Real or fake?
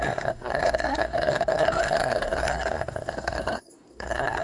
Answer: fake